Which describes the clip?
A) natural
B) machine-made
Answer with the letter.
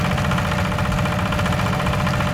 A